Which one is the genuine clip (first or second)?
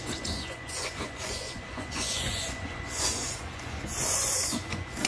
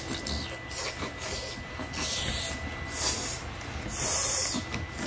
second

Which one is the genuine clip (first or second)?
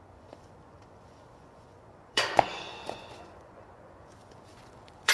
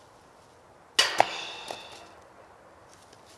second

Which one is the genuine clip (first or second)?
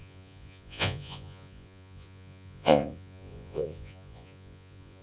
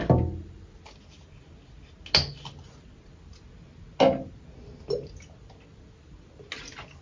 second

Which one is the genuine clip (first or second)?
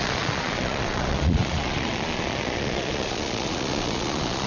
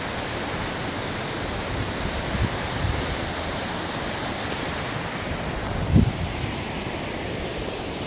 second